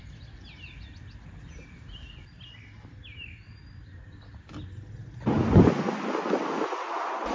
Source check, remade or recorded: recorded